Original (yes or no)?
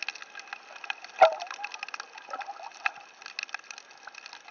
yes